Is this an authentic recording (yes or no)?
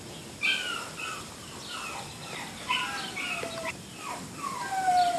yes